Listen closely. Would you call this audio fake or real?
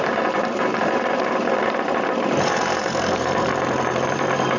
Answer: fake